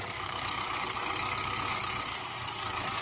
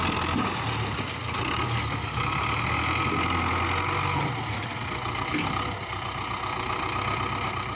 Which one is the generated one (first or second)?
first